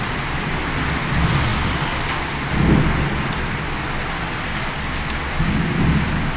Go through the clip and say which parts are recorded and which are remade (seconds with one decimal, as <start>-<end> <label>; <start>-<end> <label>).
0.0-6.4 recorded